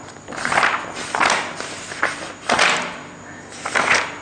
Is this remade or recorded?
recorded